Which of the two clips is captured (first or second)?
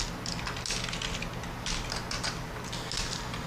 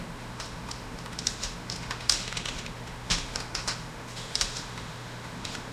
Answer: first